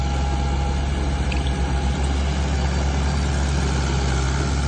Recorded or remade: recorded